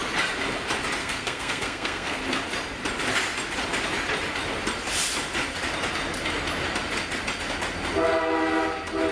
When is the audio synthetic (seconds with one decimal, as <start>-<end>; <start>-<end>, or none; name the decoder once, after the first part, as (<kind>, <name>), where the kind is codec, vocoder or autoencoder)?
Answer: 1.0-2.2 (codec, SNAC)